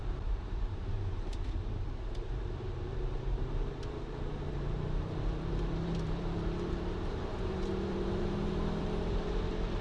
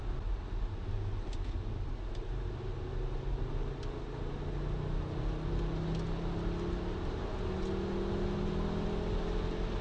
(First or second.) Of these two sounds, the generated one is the first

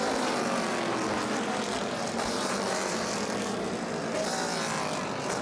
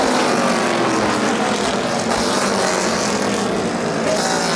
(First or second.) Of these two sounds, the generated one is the first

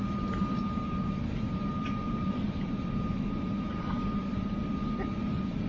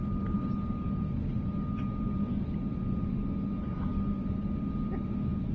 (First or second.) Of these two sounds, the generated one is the first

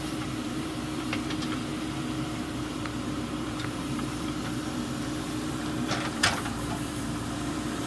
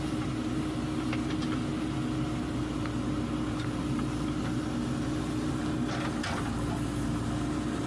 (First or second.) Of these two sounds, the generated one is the first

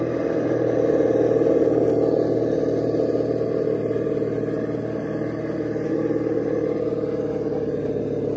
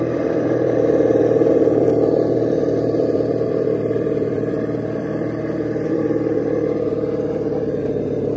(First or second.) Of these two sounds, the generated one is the second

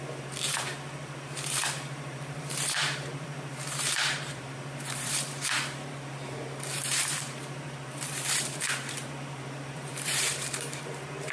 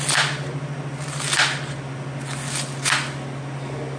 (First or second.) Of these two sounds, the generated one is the first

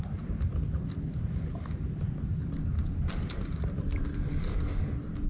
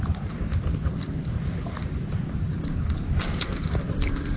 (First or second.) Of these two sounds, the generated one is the second